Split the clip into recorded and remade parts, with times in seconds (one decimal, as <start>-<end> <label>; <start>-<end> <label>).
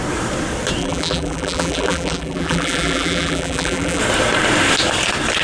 0.0-0.8 recorded; 0.8-4.0 remade; 4.0-5.4 recorded